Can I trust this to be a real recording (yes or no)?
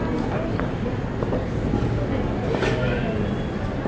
yes